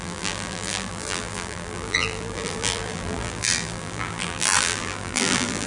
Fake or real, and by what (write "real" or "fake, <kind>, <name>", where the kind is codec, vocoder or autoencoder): fake, vocoder, BigVGAN v2